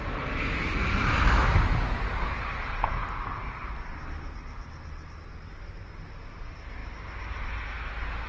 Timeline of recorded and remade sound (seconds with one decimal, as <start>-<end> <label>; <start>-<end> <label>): 0.0-8.3 recorded